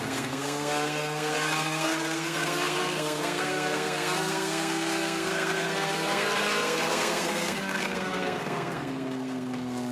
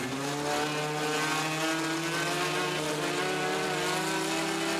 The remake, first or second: first